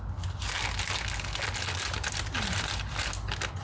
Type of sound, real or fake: real